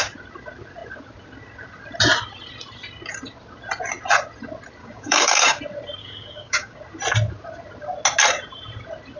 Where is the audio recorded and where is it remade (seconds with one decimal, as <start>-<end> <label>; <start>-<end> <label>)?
0.0-4.8 recorded; 4.8-5.6 remade; 5.6-6.0 recorded; 6.0-6.8 remade; 6.8-9.2 recorded

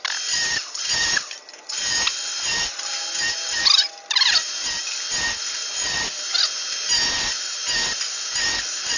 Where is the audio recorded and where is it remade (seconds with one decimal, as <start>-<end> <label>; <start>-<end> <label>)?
0.0-9.0 recorded

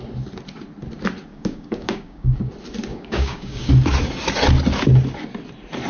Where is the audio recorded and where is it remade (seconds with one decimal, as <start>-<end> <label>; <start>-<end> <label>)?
0.0-1.3 recorded; 1.3-2.5 remade; 2.5-2.9 recorded; 2.9-3.7 remade; 3.7-5.9 recorded

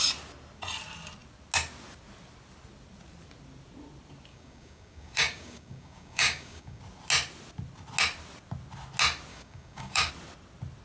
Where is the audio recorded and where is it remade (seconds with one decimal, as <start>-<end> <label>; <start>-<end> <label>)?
0.0-4.3 recorded; 4.3-6.8 remade; 6.8-9.3 recorded; 9.3-10.1 remade; 10.1-10.8 recorded

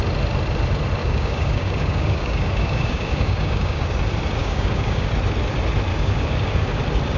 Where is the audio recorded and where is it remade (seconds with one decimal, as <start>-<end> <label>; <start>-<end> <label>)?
0.0-1.0 recorded; 1.0-3.9 remade; 3.9-4.4 recorded; 4.4-5.1 remade; 5.1-5.9 recorded; 5.9-6.8 remade; 6.8-7.2 recorded

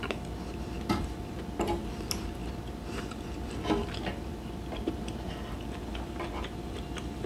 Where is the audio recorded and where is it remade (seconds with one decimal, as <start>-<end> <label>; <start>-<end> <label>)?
0.0-7.3 recorded